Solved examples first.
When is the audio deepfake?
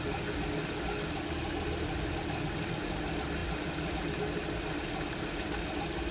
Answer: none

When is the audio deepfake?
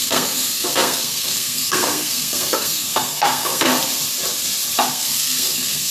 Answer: 0.0-3.7 (codec, SNAC); 4.9-5.9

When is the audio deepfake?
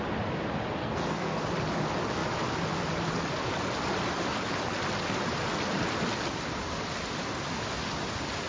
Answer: 0.8-1.4 (codec, SNAC)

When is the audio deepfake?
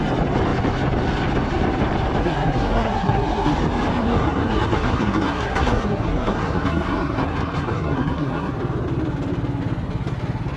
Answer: 2.2-3.5 (codec, SNAC); 4.0-8.5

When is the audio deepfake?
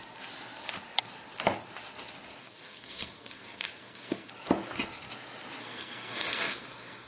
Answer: 2.4-4.3 (codec, SNAC); 5.6-7.1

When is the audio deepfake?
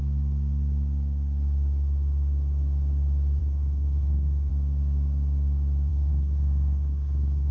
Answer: 3.4-4.5 (codec, SNAC); 5.9-7.5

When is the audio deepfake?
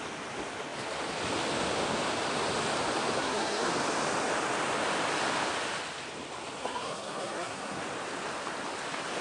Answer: 3.2-3.7 (codec, SNAC); 6.6-7.8